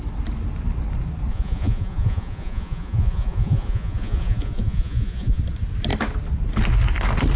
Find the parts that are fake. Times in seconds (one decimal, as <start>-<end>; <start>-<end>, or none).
1.3-5.4